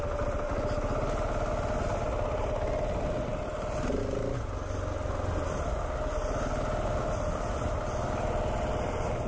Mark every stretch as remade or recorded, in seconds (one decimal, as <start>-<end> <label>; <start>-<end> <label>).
0.0-9.3 recorded